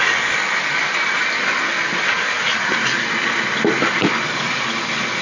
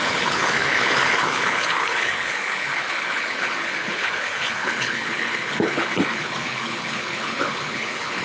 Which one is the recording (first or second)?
first